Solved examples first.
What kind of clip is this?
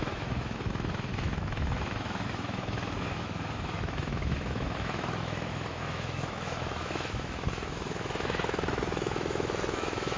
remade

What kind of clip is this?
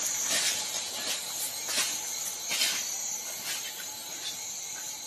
recorded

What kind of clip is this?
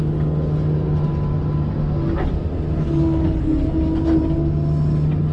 recorded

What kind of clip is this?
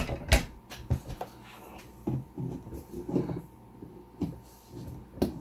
recorded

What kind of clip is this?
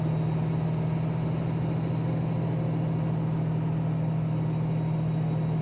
recorded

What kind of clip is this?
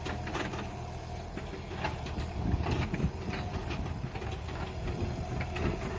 recorded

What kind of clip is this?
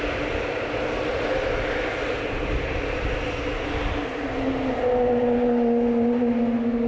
recorded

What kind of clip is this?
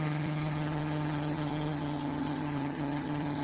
remade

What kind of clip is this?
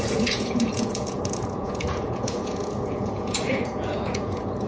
remade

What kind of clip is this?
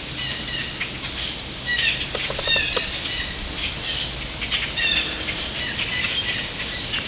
recorded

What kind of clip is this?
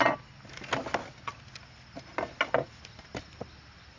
recorded